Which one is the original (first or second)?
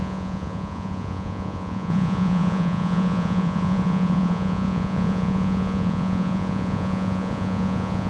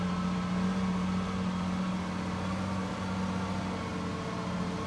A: second